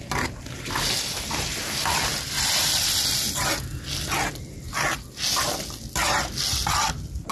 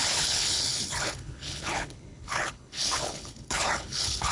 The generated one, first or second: second